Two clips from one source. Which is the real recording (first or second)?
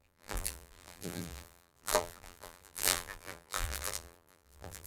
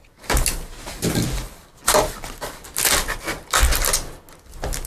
second